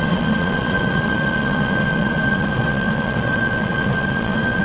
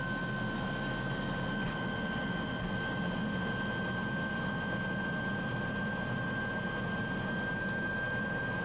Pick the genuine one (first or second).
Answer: second